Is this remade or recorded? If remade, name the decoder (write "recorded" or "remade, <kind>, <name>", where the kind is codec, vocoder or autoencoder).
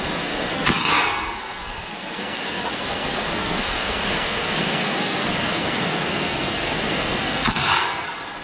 remade, codec, SNAC